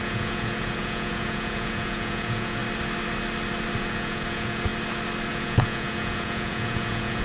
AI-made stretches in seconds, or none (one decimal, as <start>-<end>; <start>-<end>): 0.0-2.6; 3.8-4.7; 5.3-7.2